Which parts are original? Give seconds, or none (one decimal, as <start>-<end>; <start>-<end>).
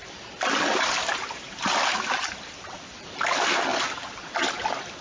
3.7-5.0